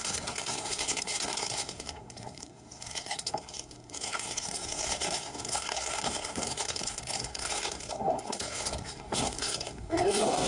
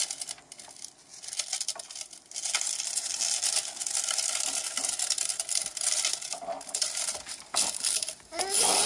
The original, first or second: second